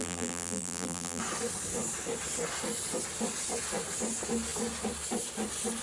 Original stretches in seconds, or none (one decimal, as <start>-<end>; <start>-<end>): 1.2-5.8